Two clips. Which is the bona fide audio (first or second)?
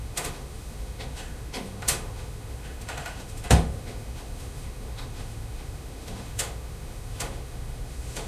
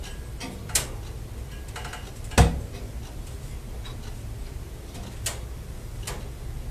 second